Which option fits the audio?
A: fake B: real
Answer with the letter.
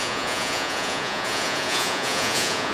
A